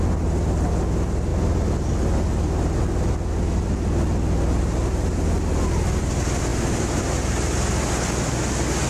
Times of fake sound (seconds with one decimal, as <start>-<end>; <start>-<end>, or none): 6.5-8.4